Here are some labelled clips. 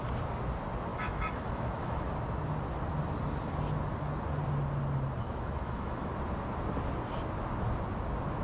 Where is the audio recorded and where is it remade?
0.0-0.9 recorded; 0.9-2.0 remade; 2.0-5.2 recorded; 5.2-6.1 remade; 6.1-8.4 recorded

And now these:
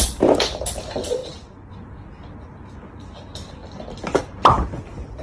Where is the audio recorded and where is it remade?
0.0-5.2 recorded

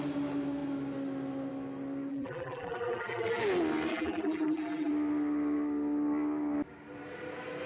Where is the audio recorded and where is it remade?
0.0-2.1 recorded; 2.1-3.4 remade; 3.4-3.9 recorded; 3.9-4.9 remade; 4.9-7.7 recorded

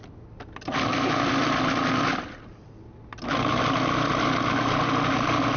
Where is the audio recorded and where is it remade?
0.0-5.6 recorded